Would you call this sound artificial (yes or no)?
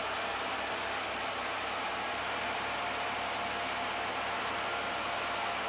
no